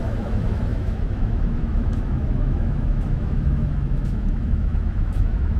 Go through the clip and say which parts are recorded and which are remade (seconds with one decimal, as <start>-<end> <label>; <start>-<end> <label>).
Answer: 0.0-5.6 remade